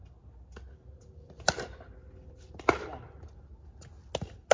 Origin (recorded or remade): recorded